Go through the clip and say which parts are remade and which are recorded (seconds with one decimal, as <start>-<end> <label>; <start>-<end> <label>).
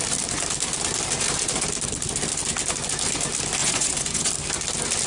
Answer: 0.0-3.6 recorded; 3.6-4.3 remade; 4.3-5.1 recorded